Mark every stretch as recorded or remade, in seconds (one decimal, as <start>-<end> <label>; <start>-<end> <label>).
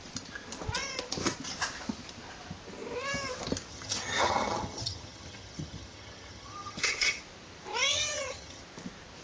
0.0-3.7 recorded; 3.7-7.2 remade; 7.2-7.9 recorded; 7.9-8.6 remade; 8.6-9.2 recorded